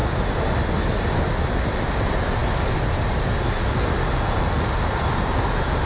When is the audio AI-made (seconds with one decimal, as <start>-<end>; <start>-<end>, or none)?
none